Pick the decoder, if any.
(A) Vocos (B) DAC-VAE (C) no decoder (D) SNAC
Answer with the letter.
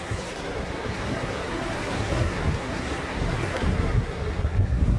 D